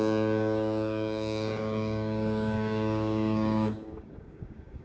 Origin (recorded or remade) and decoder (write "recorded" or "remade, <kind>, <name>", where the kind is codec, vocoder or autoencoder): remade, codec, DAC